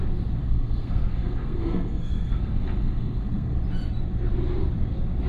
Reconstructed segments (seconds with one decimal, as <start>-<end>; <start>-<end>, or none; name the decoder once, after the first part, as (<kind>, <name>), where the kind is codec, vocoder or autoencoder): 0.4-3.6 (codec, SNAC)